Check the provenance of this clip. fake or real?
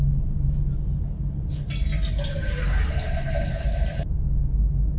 real